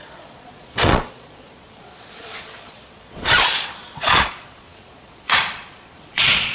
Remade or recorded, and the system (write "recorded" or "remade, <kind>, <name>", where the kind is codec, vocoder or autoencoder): remade, vocoder, Vocos